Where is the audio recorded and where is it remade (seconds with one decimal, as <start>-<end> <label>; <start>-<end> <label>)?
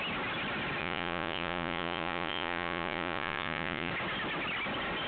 0.0-0.8 recorded; 0.8-3.9 remade; 3.9-5.1 recorded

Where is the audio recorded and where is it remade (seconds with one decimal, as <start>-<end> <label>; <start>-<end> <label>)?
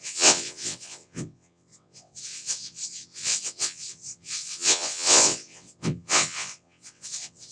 0.0-7.5 remade